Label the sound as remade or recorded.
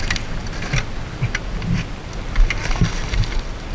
recorded